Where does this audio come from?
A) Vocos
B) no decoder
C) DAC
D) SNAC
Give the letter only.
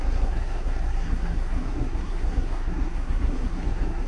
D